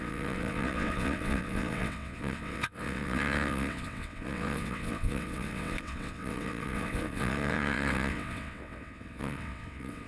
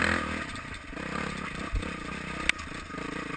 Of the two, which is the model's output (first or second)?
first